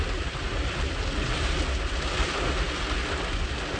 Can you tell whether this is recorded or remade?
recorded